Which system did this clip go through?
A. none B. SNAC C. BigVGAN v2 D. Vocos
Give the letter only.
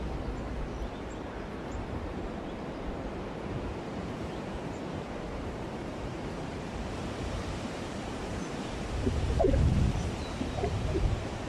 C